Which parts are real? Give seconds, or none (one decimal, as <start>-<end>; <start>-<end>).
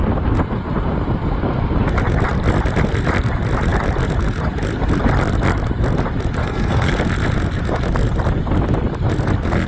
0.0-6.4; 6.9-9.7